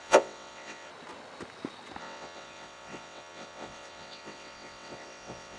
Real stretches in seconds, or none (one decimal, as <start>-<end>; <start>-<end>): 0.9-2.0